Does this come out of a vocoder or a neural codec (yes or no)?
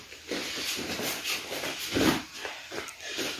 no